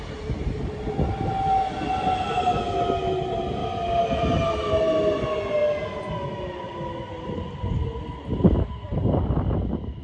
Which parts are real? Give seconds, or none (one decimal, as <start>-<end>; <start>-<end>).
0.0-3.6; 4.7-10.0